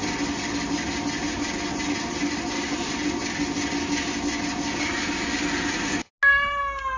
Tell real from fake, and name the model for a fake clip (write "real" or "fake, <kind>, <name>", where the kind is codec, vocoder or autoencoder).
real